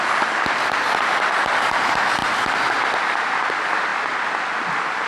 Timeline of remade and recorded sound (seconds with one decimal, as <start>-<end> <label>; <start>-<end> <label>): 0.0-5.1 recorded